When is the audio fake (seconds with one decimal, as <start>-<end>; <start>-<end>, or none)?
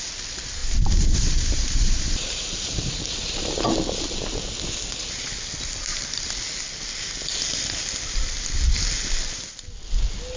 0.6-3.6